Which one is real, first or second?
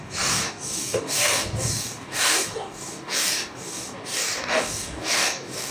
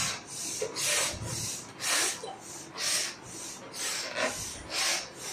second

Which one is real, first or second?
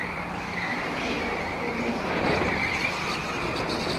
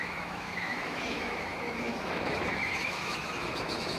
first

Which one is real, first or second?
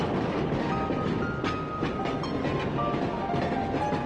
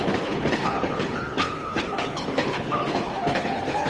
first